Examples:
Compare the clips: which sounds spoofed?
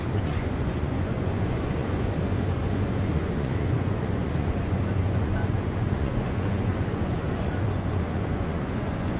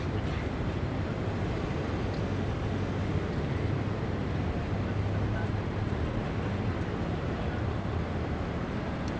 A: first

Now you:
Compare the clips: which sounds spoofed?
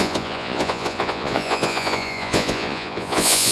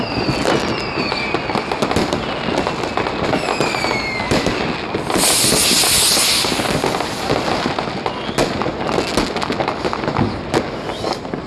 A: first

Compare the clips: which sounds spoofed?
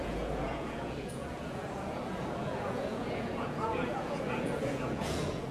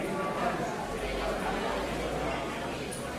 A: first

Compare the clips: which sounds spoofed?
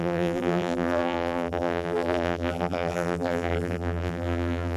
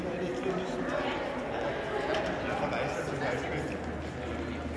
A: first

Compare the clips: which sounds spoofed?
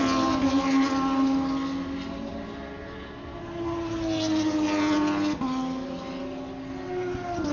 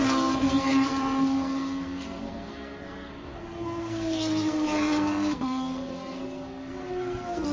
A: second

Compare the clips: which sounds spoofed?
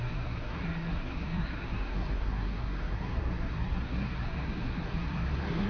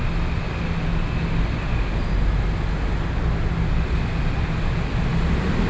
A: first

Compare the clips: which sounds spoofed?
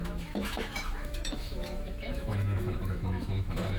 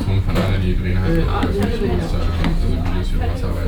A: first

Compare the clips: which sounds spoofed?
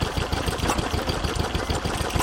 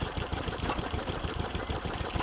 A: second